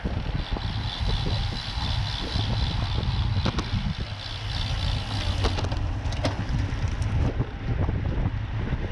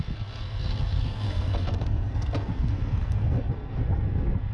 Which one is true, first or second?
first